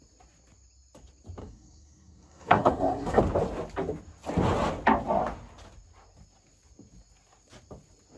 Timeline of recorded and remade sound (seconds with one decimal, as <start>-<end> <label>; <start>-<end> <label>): 0.0-1.4 recorded; 1.4-3.2 remade; 3.2-8.2 recorded